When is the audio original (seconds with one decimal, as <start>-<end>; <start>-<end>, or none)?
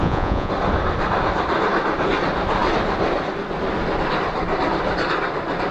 0.5-5.7